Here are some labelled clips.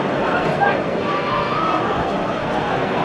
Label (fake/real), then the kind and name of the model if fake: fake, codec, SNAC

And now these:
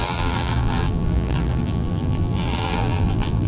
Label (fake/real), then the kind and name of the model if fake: fake, vocoder, BigVGAN v2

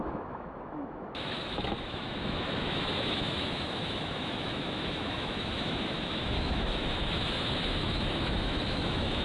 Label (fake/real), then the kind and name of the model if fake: fake, autoencoder, DAC-VAE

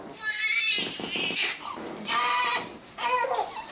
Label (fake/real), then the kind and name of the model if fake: fake, vocoder, BigVGAN v2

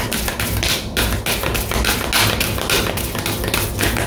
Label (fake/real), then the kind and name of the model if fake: real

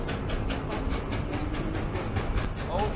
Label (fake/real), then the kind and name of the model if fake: real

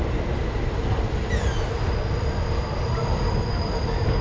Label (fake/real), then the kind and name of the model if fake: real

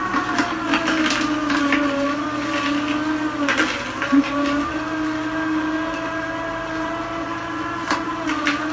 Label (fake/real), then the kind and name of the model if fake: real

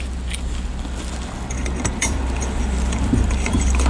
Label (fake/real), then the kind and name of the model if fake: fake, vocoder, BigVGAN v2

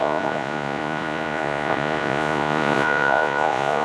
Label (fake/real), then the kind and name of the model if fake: fake, vocoder, Vocos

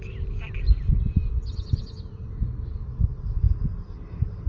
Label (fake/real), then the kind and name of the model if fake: real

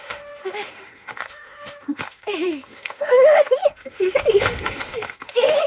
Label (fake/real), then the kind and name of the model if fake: fake, autoencoder, DAC-VAE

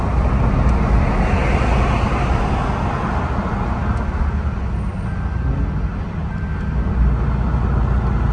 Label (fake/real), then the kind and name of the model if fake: real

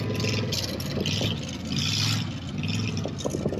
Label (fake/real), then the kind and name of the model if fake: real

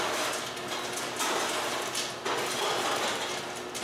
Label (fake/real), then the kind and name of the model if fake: real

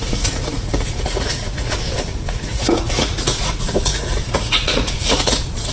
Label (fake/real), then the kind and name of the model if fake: fake, vocoder, Vocos